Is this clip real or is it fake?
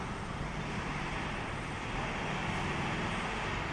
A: real